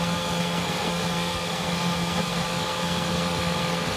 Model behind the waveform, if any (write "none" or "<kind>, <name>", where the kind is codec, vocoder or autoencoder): codec, SNAC